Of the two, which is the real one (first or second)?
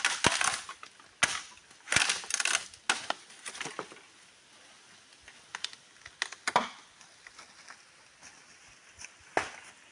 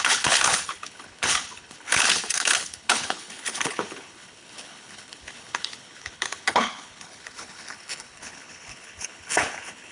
first